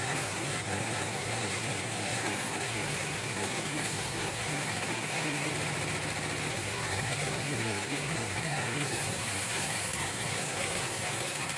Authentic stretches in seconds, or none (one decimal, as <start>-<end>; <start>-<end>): 5.5-6.5